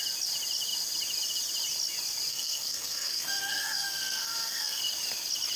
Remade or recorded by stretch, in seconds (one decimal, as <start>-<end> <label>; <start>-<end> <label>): 0.0-2.3 recorded; 2.3-4.8 remade; 4.8-5.6 recorded